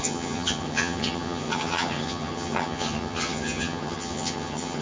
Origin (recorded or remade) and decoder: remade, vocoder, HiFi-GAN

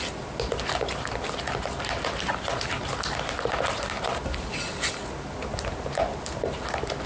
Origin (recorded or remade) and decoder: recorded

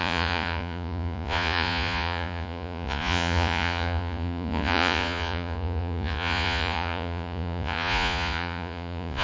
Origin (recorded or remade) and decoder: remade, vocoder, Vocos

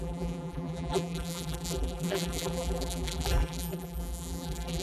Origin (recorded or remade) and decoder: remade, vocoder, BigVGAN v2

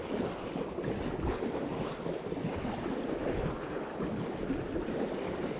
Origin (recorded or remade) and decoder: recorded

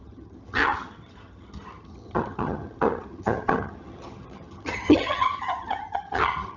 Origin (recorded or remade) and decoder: remade, vocoder, HiFi-GAN